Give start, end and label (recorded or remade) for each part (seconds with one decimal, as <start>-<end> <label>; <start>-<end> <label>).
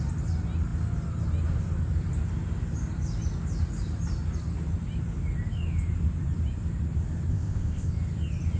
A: 0.0-7.3 recorded; 7.3-7.9 remade; 7.9-8.6 recorded